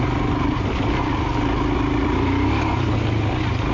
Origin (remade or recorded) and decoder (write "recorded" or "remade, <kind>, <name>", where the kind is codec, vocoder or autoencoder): recorded